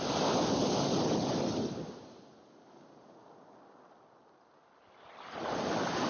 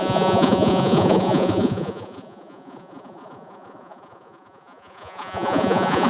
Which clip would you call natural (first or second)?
first